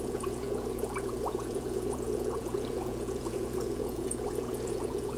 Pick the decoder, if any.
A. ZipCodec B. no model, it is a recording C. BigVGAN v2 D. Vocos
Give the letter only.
D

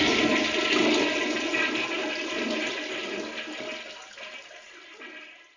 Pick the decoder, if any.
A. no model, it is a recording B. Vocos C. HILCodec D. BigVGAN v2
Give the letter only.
A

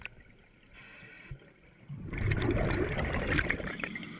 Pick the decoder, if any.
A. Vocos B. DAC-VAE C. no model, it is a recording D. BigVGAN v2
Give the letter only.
C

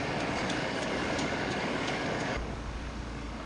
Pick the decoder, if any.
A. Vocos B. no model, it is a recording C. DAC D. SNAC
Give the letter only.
C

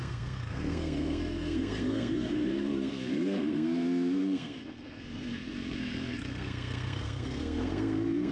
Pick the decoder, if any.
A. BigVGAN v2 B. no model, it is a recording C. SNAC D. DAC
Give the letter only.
C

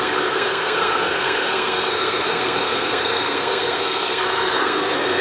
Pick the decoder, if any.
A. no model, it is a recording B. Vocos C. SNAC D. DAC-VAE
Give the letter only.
C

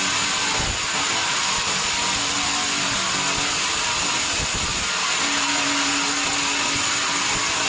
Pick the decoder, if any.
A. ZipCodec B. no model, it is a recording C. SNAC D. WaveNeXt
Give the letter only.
B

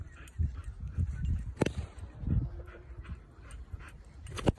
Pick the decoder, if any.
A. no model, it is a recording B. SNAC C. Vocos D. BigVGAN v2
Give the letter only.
A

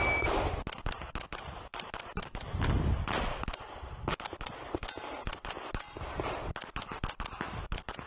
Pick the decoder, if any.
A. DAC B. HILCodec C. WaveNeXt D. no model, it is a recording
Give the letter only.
D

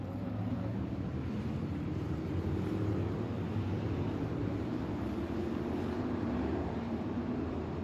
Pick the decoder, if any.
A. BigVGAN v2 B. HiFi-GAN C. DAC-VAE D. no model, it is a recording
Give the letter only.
A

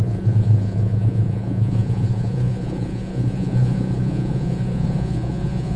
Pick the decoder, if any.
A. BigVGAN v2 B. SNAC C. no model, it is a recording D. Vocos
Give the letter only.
D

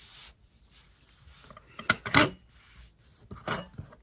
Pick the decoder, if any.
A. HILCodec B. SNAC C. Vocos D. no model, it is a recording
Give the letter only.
D